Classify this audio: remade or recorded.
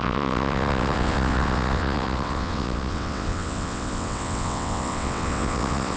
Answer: remade